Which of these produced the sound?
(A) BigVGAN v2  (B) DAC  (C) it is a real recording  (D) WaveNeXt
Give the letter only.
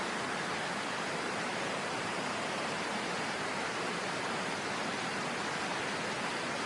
A